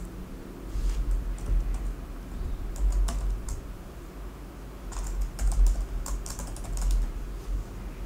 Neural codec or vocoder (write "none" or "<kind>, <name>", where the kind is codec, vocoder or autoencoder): none